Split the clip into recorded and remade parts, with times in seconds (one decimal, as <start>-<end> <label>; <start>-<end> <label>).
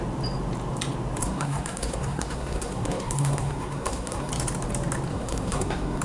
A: 0.0-1.2 recorded; 1.2-4.3 remade; 4.3-5.1 recorded; 5.1-6.0 remade